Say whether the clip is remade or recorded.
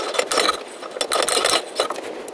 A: recorded